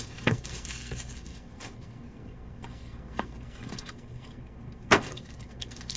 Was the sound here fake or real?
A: fake